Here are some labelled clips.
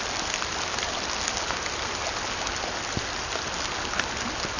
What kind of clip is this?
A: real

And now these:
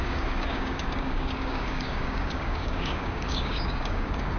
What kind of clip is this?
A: fake